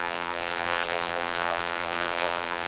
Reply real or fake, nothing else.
fake